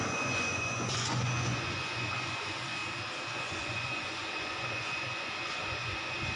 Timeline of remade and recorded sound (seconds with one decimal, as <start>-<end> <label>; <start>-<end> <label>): 0.0-2.8 remade; 2.8-3.3 recorded; 3.3-6.4 remade